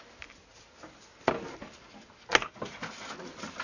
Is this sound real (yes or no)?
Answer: yes